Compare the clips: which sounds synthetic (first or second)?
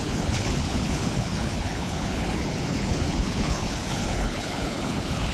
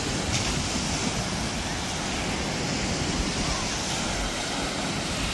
first